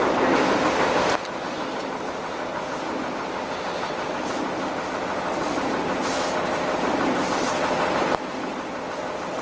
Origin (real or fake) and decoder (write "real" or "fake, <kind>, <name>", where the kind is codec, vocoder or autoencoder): real